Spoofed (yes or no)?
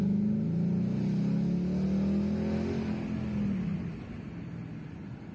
no